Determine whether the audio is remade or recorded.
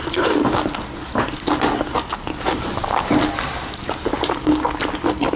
recorded